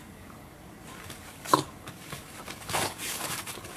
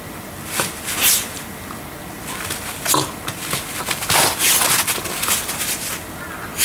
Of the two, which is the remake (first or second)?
first